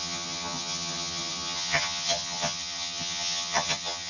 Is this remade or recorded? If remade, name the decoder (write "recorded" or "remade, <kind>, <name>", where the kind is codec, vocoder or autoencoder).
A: remade, vocoder, HiFi-GAN